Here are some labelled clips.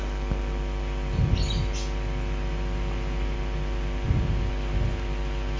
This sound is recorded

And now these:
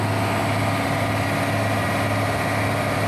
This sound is recorded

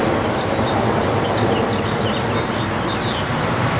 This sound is recorded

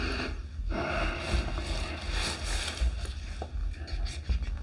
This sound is recorded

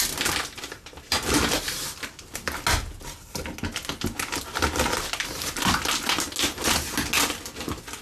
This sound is recorded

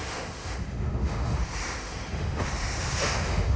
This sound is remade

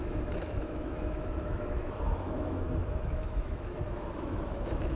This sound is remade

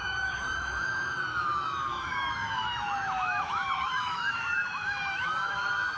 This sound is remade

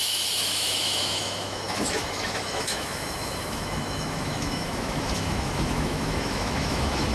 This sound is remade